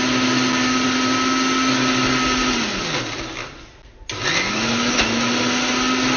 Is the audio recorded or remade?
recorded